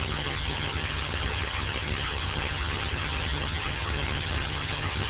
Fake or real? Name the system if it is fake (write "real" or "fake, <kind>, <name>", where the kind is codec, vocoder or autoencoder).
fake, vocoder, HiFi-GAN